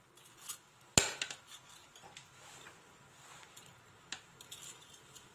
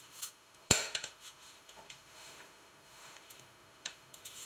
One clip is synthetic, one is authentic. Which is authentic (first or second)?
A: first